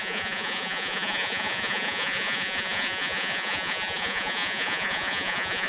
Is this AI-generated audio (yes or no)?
yes